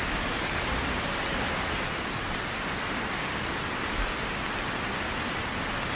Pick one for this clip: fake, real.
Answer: real